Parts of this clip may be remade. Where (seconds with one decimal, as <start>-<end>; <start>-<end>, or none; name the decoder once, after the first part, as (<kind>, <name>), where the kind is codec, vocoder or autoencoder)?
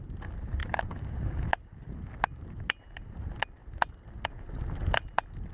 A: 0.6-1.5 (codec, DAC)